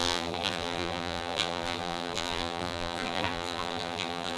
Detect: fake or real fake